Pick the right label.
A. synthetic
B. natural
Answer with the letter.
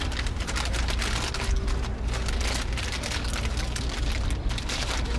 B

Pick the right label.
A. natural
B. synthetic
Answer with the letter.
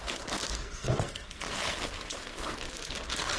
B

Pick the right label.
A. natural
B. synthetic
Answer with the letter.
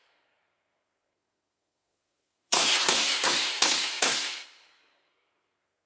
B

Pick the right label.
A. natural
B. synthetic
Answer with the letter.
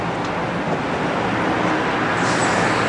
A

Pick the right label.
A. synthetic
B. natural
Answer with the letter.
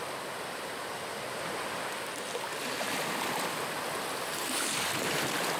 B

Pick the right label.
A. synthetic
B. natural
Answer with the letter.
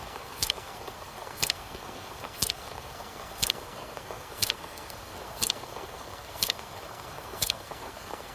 A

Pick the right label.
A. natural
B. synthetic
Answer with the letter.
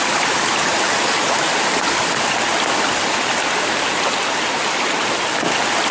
A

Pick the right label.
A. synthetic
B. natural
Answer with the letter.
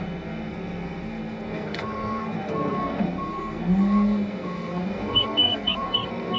A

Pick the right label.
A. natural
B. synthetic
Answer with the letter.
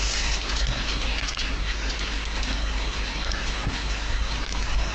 B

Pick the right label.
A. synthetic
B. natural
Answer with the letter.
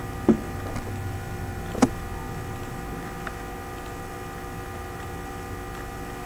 B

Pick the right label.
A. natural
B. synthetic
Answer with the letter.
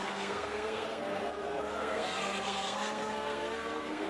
B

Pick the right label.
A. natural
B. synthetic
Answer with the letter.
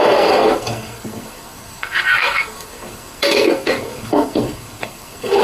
B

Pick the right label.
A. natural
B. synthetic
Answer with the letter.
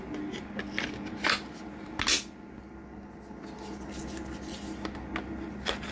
A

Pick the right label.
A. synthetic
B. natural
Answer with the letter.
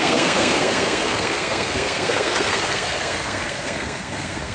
A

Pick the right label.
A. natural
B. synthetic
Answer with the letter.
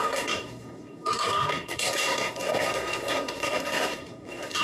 B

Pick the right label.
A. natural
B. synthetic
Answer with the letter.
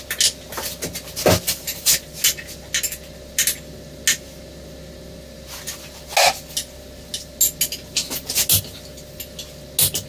A